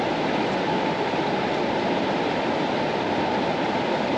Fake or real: fake